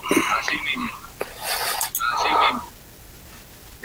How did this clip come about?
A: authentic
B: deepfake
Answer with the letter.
A